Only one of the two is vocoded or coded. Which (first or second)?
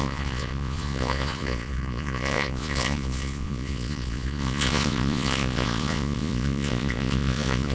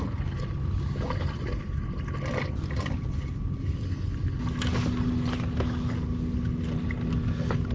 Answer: first